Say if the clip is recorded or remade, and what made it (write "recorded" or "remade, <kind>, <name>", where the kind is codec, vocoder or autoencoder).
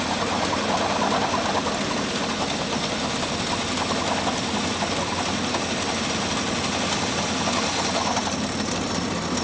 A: recorded